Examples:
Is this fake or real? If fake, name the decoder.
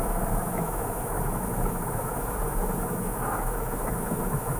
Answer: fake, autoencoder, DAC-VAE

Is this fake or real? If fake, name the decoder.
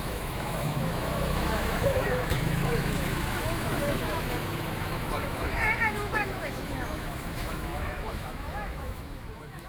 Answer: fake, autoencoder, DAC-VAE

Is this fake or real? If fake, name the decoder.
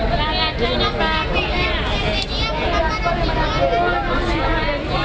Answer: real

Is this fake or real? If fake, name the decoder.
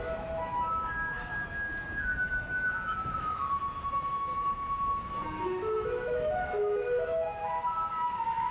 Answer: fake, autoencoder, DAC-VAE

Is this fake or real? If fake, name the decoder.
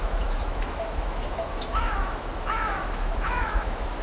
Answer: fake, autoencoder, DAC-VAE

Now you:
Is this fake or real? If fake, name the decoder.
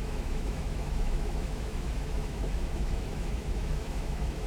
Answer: fake, autoencoder, DAC-VAE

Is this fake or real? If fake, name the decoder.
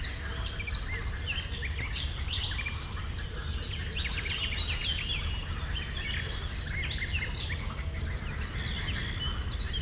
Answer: real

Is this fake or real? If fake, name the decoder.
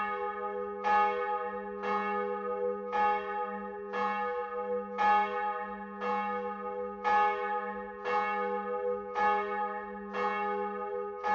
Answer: real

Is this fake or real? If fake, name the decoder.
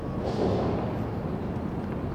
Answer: real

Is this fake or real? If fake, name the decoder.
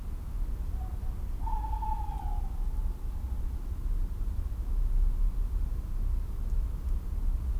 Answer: real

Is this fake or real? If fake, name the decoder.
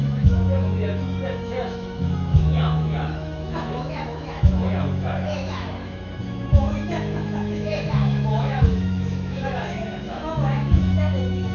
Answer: fake, autoencoder, DAC-VAE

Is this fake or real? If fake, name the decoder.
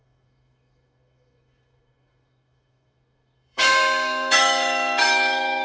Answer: fake, autoencoder, DAC-VAE